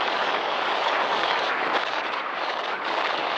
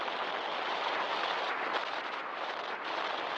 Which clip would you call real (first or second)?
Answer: second